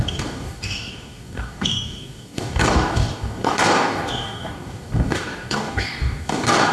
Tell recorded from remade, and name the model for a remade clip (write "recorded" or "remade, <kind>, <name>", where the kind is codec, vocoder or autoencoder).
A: remade, codec, DAC